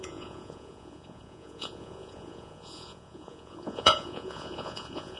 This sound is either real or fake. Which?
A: fake